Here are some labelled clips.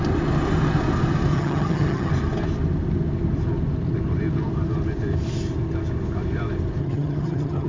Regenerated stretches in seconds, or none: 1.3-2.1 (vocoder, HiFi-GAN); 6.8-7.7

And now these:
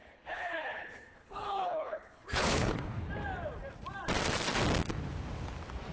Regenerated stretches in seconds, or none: 0.0-3.1 (codec, HILCodec)

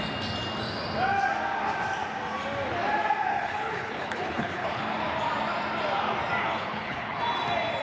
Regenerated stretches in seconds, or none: 3.3-4.8 (codec, HILCodec); 6.4-7.2

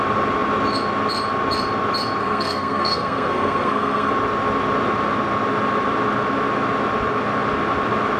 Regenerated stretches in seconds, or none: 2.2-4.1 (codec, SNAC)

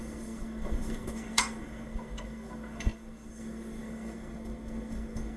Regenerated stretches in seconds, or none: 0.0-5.4 (codec, SNAC)